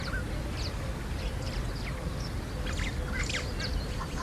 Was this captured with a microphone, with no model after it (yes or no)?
yes